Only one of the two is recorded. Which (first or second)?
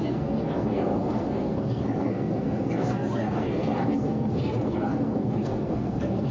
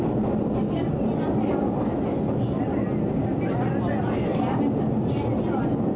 second